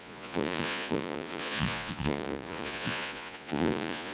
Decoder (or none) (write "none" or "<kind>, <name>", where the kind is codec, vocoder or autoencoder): vocoder, Vocos